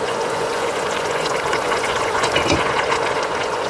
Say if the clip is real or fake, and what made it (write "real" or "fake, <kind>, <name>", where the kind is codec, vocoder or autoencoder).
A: fake, vocoder, Vocos